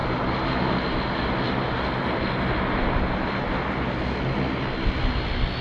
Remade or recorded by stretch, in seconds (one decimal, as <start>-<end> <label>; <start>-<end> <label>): 0.0-5.6 recorded

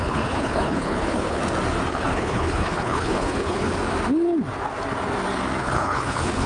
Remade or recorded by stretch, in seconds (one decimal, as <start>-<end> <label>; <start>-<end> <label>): 0.0-1.4 remade; 1.4-1.9 recorded; 1.9-3.7 remade; 3.7-5.6 recorded; 5.6-6.5 remade

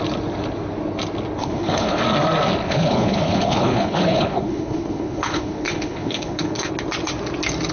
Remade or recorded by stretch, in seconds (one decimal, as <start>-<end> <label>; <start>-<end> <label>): 0.0-1.4 recorded; 1.4-2.0 remade; 2.0-2.6 recorded; 2.6-6.7 remade; 6.7-7.7 recorded

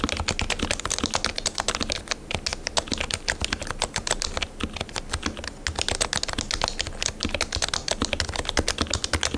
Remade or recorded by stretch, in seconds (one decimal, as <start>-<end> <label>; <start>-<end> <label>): 0.0-9.4 recorded